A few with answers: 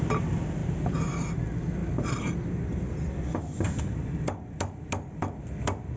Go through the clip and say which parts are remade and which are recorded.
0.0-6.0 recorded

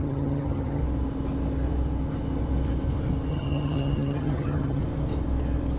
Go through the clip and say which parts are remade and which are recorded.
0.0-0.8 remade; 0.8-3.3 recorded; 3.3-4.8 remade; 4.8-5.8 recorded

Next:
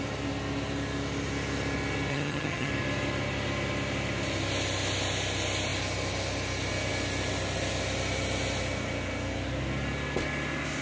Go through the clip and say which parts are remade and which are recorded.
0.0-2.1 recorded; 2.1-2.7 remade; 2.7-10.8 recorded

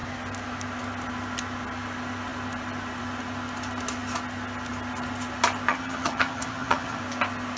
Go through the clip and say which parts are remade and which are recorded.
0.0-5.7 recorded; 5.7-7.0 remade; 7.0-7.6 recorded